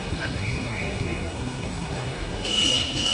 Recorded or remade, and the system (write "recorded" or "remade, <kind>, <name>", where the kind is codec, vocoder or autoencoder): remade, codec, SNAC